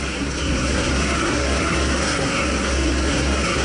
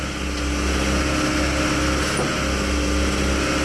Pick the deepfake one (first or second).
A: first